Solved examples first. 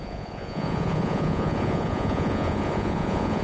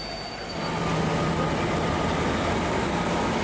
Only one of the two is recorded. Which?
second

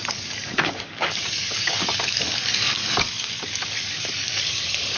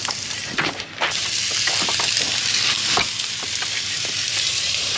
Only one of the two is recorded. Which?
second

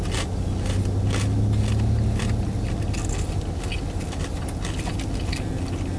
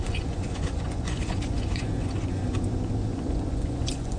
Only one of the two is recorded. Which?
first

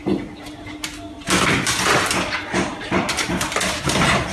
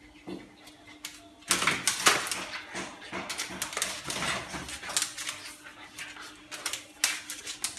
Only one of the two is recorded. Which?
second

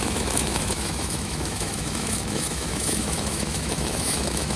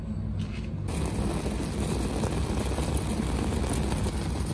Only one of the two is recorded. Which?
second